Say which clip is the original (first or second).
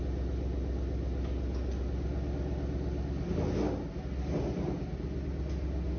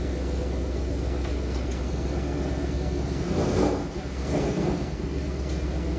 first